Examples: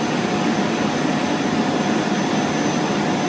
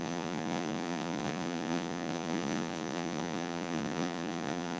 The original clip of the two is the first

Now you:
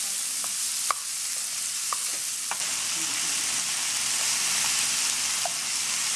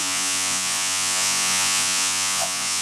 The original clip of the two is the first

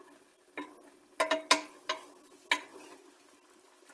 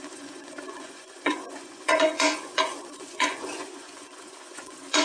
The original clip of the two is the first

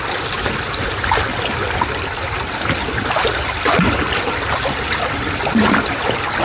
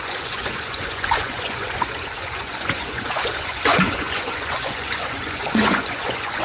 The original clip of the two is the first